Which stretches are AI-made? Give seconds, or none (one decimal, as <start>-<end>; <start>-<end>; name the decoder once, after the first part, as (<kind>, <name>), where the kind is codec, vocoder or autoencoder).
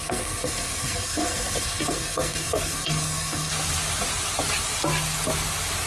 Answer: 0.0-3.5 (codec, SNAC)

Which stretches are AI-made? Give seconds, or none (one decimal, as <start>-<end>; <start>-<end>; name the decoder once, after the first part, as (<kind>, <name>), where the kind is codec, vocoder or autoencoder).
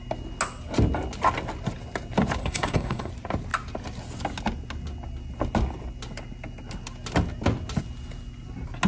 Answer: 2.4-3.1 (codec, SNAC)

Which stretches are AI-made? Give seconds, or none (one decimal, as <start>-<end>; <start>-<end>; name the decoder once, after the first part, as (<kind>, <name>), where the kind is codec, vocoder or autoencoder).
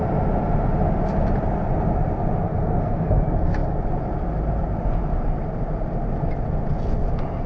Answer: 2.5-3.2 (codec, SNAC)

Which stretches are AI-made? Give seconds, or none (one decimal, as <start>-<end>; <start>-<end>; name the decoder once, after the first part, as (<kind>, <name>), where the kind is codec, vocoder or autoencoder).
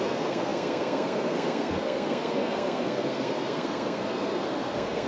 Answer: 0.0-5.1 (codec, SNAC)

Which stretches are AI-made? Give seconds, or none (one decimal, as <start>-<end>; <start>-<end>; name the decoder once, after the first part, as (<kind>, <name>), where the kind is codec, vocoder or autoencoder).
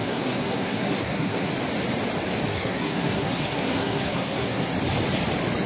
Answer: 0.0-1.5 (codec, SNAC); 2.5-4.7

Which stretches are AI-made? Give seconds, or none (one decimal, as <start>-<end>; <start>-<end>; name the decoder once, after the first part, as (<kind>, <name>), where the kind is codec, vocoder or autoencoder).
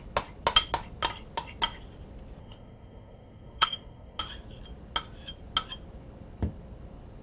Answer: 2.4-4.2 (codec, SNAC)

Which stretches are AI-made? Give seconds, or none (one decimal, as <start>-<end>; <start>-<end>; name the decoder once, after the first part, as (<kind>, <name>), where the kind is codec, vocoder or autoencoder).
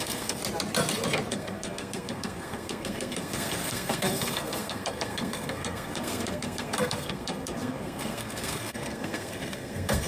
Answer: 0.0-0.4 (codec, SNAC); 1.3-10.1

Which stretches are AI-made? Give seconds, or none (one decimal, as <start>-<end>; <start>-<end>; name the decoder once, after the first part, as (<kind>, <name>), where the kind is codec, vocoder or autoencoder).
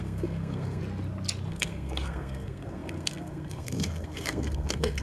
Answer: 0.0-0.8 (codec, SNAC); 1.5-5.0